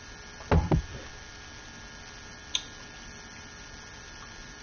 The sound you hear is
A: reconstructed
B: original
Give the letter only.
B